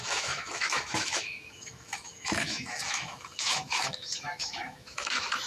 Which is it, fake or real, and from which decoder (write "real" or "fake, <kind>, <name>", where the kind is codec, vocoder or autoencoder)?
fake, autoencoder, DAC-VAE